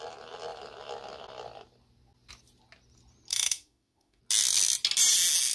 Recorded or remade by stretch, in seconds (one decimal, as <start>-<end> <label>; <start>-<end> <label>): 0.0-3.3 recorded; 3.3-4.2 remade; 4.2-5.5 recorded